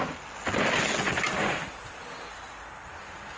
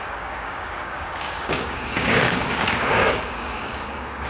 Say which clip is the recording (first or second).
first